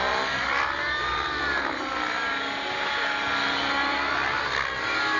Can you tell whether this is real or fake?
real